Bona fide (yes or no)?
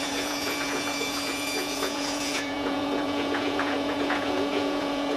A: no